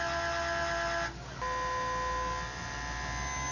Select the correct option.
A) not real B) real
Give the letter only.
B